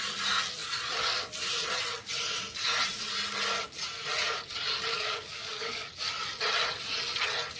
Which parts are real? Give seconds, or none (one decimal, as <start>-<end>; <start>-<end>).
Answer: 0.0-4.9; 6.0-7.6